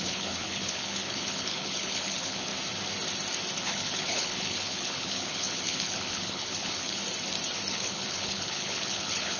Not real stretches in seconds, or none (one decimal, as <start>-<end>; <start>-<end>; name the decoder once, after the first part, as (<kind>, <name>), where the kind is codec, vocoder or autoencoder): 0.0-2.5 (codec, HILCodec); 3.6-7.0; 7.7-9.4